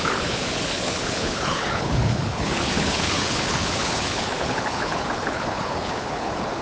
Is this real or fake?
fake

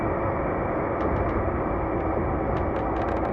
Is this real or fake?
real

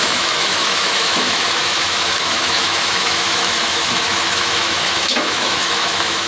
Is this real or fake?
fake